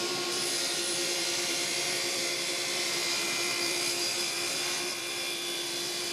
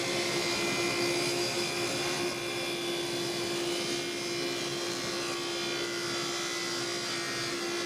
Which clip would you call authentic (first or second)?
second